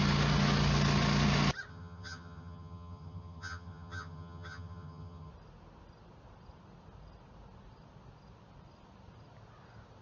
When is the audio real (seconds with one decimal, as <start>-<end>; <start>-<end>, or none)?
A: 0.0-1.7; 5.3-10.0